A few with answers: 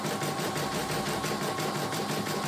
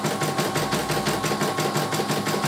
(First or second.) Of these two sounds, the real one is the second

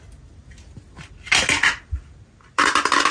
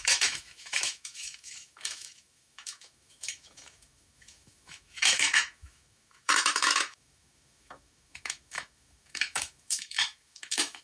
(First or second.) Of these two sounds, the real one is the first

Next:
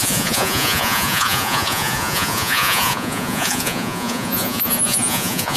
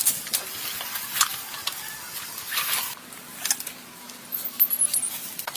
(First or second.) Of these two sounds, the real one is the second